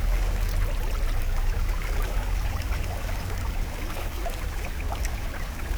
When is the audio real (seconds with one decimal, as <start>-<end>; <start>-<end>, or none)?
0.5-1.2